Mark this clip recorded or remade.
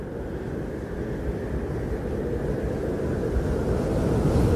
recorded